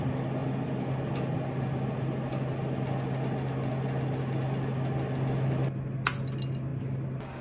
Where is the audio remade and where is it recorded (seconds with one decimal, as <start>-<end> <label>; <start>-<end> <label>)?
0.0-7.4 recorded